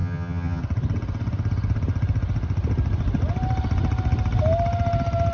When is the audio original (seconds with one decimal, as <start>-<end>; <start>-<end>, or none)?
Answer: 0.6-5.3